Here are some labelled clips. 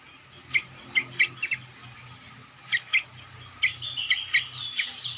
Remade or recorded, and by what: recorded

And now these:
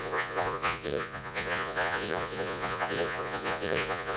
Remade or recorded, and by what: remade, vocoder, Vocos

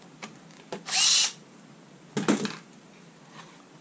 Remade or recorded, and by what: recorded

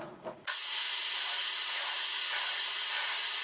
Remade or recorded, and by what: remade, vocoder, Vocos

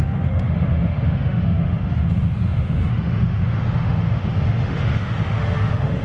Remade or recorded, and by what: remade, autoencoder, DAC-VAE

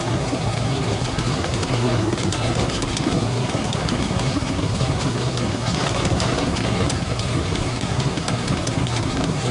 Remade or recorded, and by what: remade, codec, SNAC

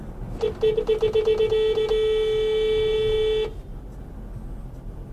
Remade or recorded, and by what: recorded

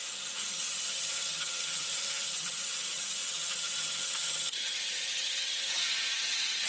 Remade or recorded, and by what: remade, vocoder, HiFi-GAN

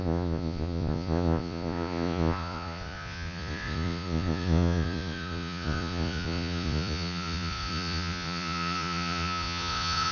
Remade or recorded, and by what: remade, vocoder, Vocos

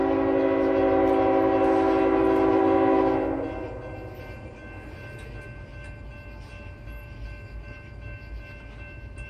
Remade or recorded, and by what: recorded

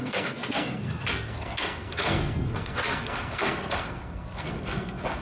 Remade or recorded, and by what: remade, codec, SNAC